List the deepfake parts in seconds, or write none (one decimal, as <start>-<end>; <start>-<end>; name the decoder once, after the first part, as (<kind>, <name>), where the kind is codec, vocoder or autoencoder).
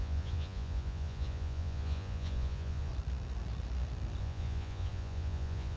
0.0-2.9 (vocoder, Vocos); 4.2-5.8